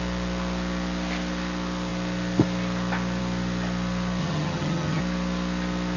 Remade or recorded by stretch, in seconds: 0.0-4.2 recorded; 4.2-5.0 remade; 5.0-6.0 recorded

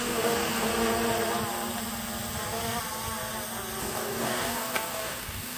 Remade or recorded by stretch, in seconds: 0.0-0.7 remade; 0.7-3.8 recorded; 3.8-5.6 remade

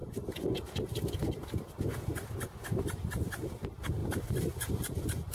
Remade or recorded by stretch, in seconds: 0.0-5.3 recorded

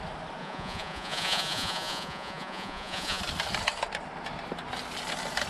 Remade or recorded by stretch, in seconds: 0.0-0.4 recorded; 0.4-3.2 remade; 3.2-5.5 recorded

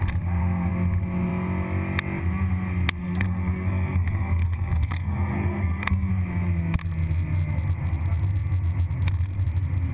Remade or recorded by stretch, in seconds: 0.0-3.0 recorded; 3.0-6.1 remade; 6.1-9.9 recorded

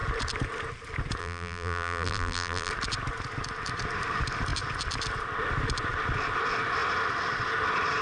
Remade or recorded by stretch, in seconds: 0.0-1.2 recorded; 1.2-2.7 remade; 2.7-8.0 recorded